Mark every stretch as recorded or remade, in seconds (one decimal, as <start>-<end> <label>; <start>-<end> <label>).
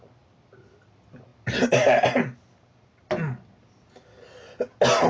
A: 0.0-5.1 recorded